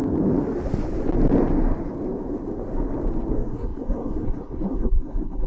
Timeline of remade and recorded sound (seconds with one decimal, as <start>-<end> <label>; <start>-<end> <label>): 0.0-3.3 recorded; 3.3-5.5 remade